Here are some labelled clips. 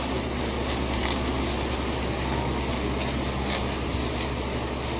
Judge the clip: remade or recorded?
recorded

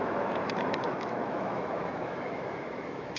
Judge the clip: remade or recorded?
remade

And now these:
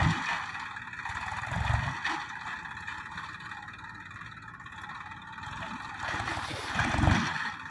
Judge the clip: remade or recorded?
recorded